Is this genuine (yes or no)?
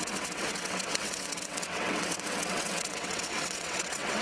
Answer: no